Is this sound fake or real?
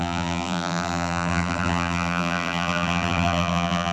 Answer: fake